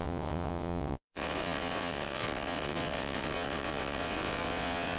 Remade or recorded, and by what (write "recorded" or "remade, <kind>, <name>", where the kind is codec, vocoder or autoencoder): remade, vocoder, WaveNeXt